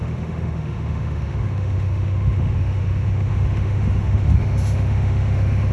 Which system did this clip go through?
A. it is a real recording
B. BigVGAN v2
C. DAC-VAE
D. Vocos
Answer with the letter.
C